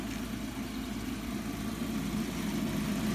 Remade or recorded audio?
recorded